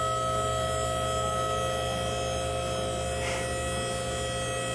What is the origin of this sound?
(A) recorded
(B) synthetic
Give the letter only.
A